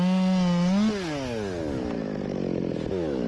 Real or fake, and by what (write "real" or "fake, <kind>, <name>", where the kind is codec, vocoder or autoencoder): real